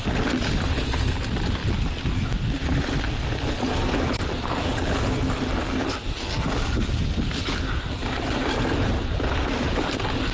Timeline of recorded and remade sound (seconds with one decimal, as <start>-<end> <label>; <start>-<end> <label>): 0.0-10.3 recorded